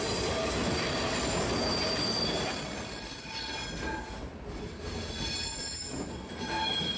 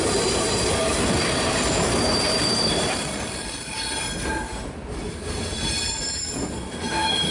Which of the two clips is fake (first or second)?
second